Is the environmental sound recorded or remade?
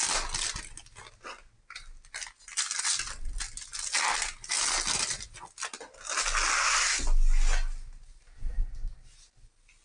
recorded